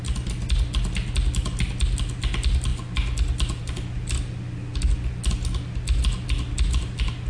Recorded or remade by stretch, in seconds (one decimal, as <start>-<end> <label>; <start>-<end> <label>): 0.0-7.3 recorded